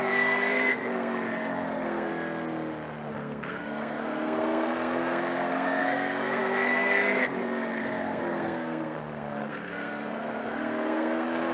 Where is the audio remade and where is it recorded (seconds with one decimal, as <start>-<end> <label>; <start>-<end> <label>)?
0.0-2.1 remade; 2.1-3.1 recorded; 3.1-11.5 remade